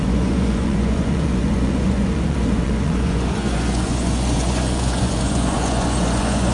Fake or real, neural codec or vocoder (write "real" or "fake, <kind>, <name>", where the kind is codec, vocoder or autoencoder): fake, vocoder, Vocos